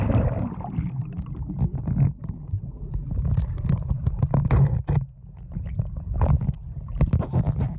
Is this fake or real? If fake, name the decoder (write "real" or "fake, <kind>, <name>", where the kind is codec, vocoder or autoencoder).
real